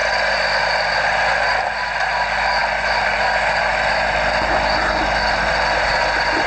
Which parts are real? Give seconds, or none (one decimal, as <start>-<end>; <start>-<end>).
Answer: 0.0-6.5